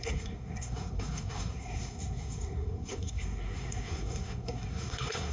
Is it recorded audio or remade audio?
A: remade